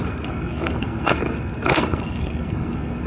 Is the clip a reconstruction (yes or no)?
yes